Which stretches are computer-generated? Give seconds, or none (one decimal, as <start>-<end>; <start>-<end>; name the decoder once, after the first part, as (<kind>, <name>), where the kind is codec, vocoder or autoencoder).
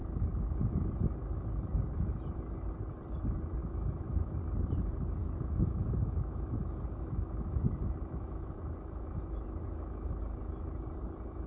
3.6-4.4 (autoencoder, DAC-VAE); 5.2-10.2